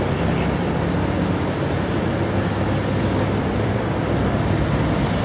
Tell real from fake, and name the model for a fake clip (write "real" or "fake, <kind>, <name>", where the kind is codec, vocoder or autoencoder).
real